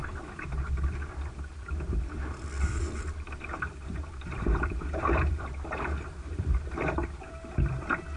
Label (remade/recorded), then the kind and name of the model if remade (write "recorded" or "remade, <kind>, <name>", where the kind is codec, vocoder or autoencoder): remade, vocoder, BigVGAN v2